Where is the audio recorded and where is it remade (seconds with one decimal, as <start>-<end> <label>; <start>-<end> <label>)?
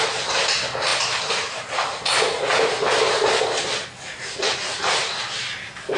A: 0.0-6.0 recorded